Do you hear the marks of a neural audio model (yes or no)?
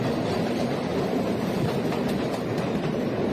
yes